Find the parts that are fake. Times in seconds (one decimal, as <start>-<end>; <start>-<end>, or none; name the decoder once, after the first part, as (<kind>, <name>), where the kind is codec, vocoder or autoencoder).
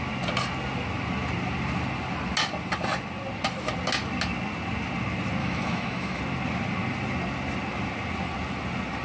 5.4-6.2 (autoencoder, DAC-VAE)